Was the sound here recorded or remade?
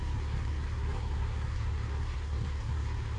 remade